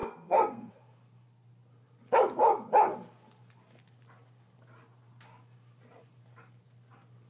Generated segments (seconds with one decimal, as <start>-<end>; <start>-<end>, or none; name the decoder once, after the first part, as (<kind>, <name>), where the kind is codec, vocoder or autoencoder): 0.0-0.7 (codec, SNAC)